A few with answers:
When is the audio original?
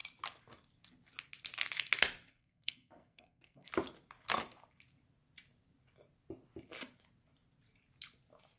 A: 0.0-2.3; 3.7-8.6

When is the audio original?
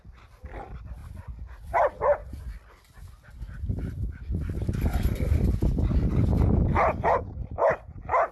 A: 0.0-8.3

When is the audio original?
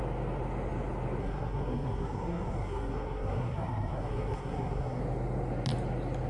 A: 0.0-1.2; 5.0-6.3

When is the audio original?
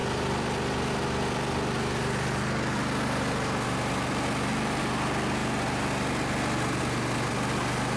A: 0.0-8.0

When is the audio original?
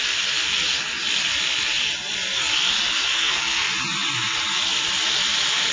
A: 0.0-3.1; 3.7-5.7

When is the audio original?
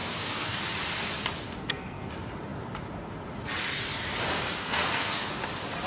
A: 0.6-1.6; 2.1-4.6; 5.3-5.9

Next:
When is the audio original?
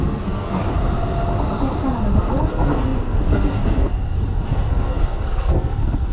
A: 0.6-2.5